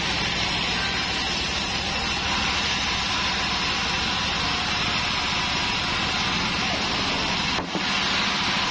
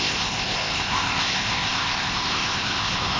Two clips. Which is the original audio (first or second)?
first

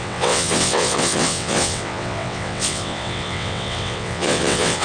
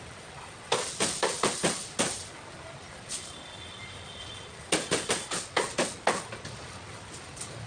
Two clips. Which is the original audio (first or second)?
second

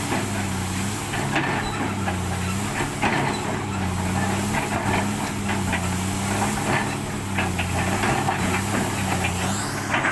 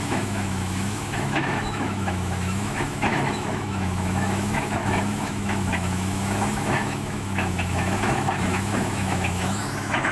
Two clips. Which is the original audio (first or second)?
first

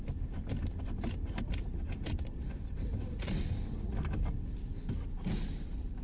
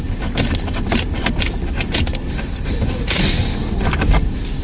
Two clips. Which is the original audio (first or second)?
second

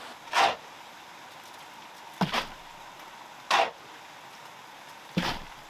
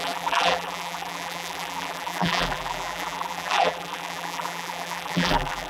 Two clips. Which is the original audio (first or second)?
first